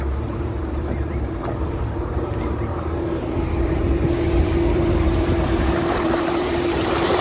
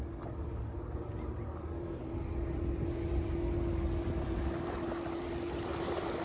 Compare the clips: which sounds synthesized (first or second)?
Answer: first